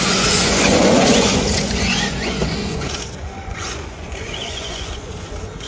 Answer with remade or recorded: remade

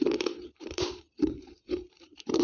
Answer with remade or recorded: remade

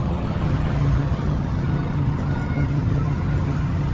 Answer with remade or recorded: remade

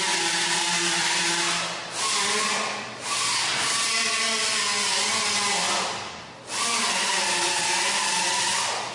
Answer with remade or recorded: recorded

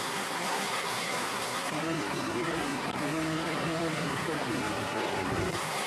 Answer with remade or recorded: remade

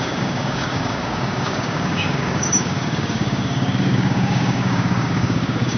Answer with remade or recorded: remade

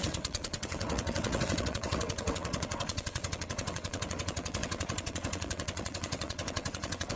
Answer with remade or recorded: remade